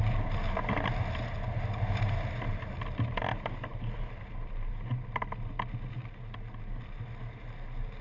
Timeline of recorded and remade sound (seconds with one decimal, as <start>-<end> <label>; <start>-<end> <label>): 0.0-8.0 recorded